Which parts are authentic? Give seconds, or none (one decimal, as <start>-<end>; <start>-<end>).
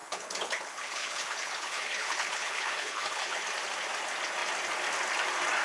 3.4-5.6